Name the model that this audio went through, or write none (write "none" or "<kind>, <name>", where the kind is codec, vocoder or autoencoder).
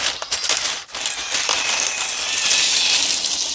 none